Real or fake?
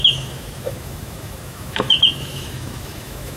fake